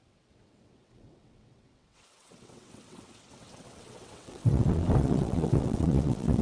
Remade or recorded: remade